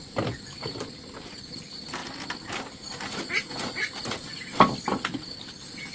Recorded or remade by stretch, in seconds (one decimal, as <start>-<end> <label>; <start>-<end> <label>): 0.0-5.9 recorded